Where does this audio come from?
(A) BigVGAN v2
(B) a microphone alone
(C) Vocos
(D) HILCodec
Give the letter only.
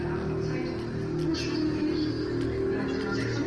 B